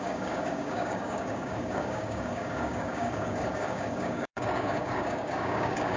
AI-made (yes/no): yes